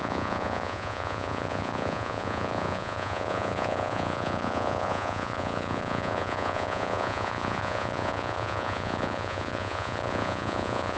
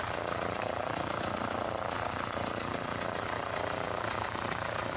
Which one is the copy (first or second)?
first